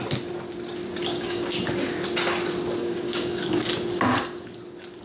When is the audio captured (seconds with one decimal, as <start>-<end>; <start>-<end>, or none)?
0.0-1.0; 1.5-2.8; 3.4-5.0